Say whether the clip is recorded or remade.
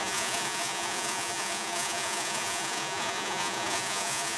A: remade